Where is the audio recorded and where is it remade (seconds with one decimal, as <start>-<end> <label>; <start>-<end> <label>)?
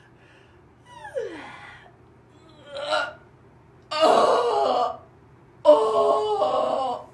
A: 0.0-7.1 recorded